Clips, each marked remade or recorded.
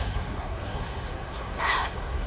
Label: remade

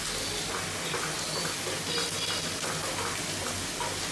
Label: recorded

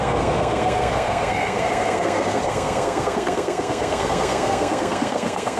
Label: remade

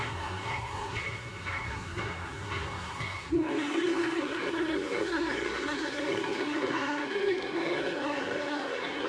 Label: remade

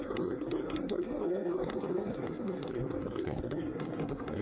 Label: remade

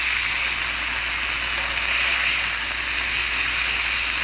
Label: recorded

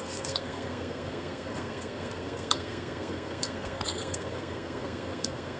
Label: remade